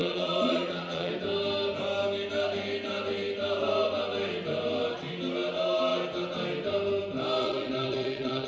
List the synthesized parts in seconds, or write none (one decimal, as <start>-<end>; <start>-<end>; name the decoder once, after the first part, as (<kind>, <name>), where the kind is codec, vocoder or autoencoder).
0.0-1.1 (vocoder, Vocos); 7.4-8.5